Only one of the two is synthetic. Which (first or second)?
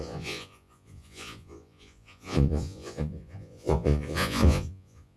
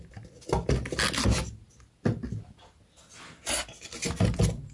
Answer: first